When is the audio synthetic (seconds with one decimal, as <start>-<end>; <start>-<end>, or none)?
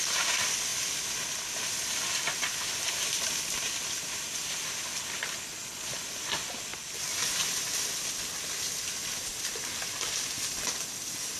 none